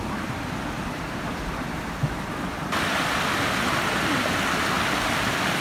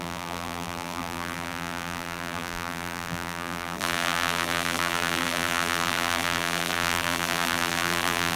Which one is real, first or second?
first